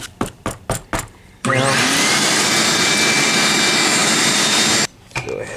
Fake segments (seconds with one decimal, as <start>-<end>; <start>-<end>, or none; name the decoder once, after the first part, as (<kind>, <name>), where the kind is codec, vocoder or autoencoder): none